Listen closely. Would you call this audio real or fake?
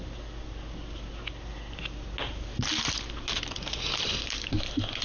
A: real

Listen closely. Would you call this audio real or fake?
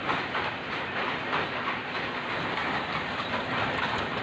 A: real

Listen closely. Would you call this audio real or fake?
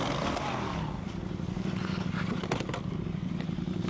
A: real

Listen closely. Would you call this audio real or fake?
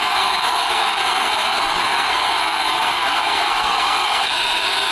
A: fake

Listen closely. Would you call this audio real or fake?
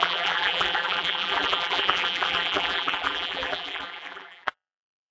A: fake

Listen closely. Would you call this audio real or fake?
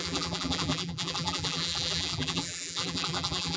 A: fake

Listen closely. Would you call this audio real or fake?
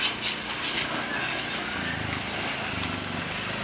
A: real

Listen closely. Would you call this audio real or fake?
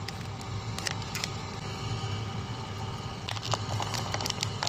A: real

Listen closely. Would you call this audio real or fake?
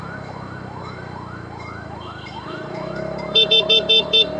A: fake